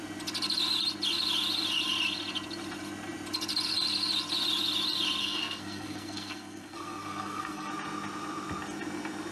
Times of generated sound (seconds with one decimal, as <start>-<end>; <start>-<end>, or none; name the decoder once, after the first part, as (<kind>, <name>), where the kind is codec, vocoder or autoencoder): 5.2-7.7 (codec, SNAC)